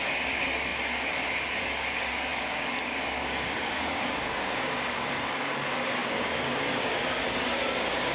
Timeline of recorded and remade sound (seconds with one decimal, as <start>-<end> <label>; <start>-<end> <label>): 0.0-8.1 remade